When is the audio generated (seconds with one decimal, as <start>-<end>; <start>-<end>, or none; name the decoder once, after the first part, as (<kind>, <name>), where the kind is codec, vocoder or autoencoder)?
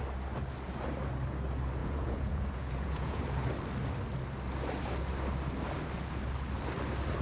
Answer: 1.8-3.2 (vocoder, Vocos)